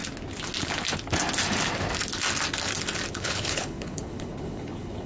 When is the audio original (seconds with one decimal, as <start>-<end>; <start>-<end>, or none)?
0.0-3.1